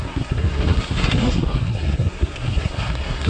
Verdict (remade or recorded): remade